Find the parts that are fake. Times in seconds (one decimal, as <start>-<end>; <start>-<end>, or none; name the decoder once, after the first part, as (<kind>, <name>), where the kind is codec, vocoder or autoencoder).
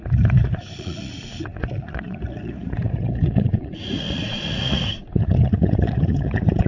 0.0-6.7 (vocoder, Vocos)